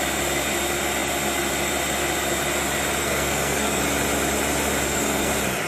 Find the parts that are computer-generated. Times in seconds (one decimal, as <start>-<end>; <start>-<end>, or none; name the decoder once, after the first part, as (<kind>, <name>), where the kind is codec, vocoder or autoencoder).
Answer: 3.0-3.8 (codec, SNAC); 4.8-5.3